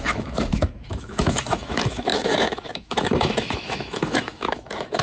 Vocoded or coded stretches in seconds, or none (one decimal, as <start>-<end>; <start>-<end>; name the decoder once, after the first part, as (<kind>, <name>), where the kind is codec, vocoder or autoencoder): 0.0-5.0 (autoencoder, DAC-VAE)

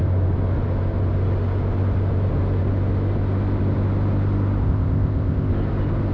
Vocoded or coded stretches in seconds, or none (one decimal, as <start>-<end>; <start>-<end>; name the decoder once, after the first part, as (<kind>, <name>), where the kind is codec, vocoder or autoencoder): 4.6-5.5 (codec, ZipCodec)

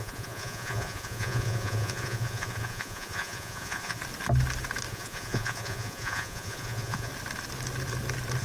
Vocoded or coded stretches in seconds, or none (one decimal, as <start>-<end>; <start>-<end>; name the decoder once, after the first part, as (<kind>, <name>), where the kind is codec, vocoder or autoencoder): 0.0-4.0 (vocoder, Vocos); 4.9-7.1